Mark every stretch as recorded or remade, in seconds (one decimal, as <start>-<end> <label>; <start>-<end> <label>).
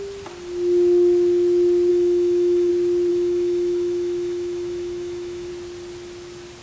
0.0-1.9 recorded; 1.9-2.7 remade; 2.7-3.1 recorded; 3.1-5.5 remade; 5.5-6.6 recorded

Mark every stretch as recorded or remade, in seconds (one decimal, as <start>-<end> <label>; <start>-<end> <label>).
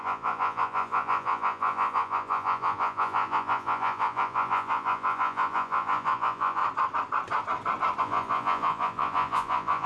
0.0-6.6 remade; 6.6-8.0 recorded; 8.0-9.9 remade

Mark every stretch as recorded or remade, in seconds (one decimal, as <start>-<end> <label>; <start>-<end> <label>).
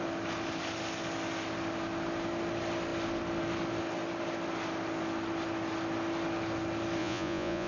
0.0-7.0 recorded; 7.0-7.7 remade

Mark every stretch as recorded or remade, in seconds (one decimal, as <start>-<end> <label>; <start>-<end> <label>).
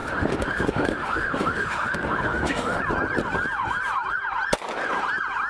0.0-2.8 remade; 2.8-5.5 recorded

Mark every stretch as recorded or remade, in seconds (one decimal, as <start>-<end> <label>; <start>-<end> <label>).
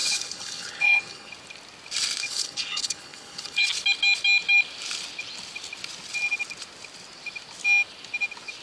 0.0-1.3 remade; 1.3-2.2 recorded; 2.2-3.7 remade; 3.7-8.6 recorded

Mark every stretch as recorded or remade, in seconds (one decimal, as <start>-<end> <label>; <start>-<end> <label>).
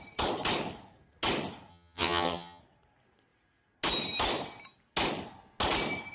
0.0-1.7 recorded; 1.7-2.6 remade; 2.6-6.1 recorded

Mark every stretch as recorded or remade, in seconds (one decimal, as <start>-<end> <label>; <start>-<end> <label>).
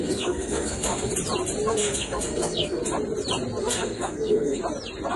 0.0-1.1 remade; 1.1-1.7 recorded; 1.7-2.8 remade; 2.8-3.6 recorded; 3.6-4.6 remade; 4.6-5.2 recorded